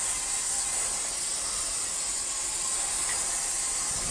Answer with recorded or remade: recorded